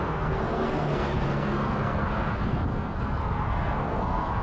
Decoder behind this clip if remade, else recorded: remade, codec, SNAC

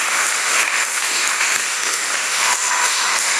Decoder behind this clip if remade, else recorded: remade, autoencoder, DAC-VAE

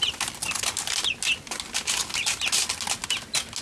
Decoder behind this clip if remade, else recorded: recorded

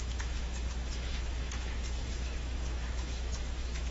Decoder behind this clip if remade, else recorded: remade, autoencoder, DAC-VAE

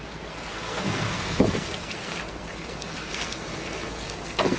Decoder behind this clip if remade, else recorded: remade, codec, SNAC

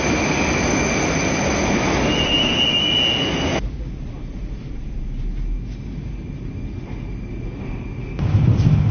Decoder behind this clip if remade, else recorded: recorded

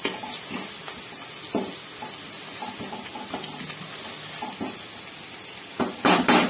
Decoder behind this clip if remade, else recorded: recorded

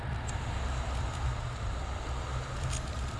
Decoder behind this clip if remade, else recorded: recorded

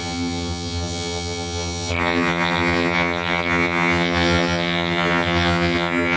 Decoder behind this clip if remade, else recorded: remade, vocoder, HiFi-GAN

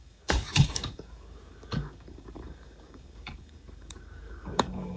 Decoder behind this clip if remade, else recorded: remade, codec, DAC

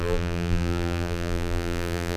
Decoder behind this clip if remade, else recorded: remade, vocoder, BigVGAN v2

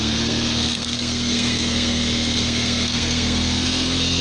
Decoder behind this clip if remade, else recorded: remade, codec, SNAC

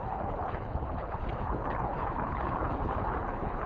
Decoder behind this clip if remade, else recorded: remade, codec, HILCodec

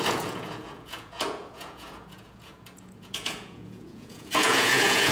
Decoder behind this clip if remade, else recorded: remade, vocoder, Vocos